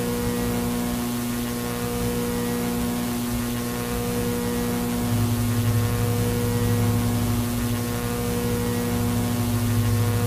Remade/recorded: recorded